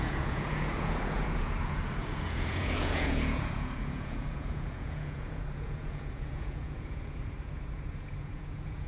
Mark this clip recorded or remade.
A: remade